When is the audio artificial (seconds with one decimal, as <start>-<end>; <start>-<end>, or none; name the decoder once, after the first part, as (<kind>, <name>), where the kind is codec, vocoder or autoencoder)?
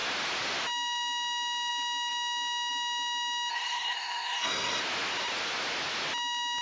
3.5-4.8 (codec, SNAC)